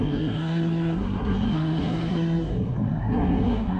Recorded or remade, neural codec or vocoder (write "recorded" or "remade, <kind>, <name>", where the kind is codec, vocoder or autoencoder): remade, codec, SNAC